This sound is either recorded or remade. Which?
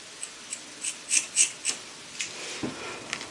recorded